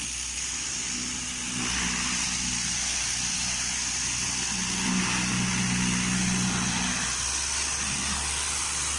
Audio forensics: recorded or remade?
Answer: recorded